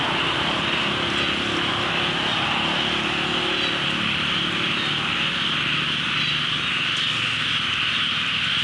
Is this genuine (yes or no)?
yes